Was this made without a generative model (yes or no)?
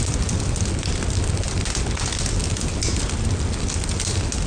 yes